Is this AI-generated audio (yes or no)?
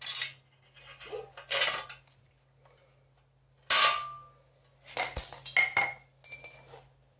no